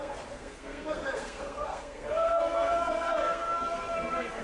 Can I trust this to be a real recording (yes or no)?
no